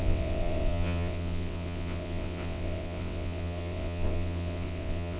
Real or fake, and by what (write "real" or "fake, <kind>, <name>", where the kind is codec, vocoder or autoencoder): fake, vocoder, WaveNeXt